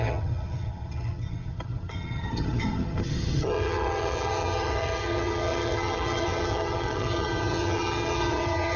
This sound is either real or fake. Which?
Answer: fake